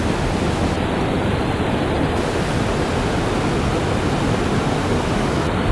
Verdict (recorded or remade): recorded